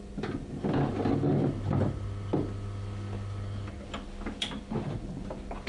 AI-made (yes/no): yes